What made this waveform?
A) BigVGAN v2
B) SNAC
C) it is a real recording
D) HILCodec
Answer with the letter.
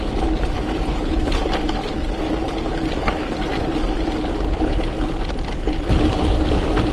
C